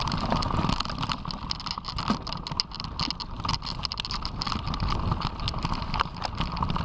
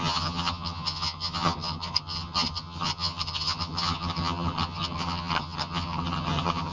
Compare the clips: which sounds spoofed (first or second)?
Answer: second